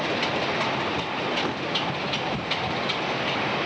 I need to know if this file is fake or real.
real